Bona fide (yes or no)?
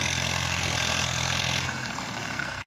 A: no